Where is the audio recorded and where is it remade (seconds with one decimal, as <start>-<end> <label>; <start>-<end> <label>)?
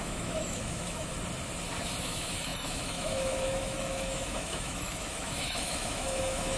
0.0-1.1 remade; 1.1-2.0 recorded; 2.0-6.6 remade